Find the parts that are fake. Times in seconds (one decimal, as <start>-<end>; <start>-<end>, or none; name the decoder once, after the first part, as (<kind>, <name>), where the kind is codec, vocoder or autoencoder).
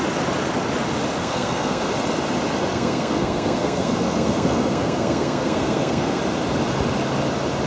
1.2-1.9 (codec, SNAC); 2.7-6.2